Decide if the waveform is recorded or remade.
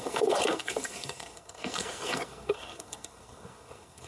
remade